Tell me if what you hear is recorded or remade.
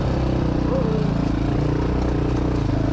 recorded